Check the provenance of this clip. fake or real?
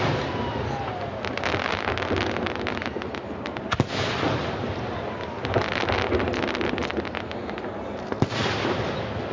real